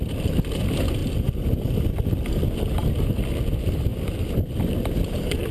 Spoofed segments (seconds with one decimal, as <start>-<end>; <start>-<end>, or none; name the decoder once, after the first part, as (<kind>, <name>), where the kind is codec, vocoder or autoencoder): none